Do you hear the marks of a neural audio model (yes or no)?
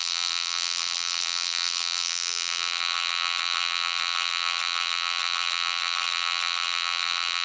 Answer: yes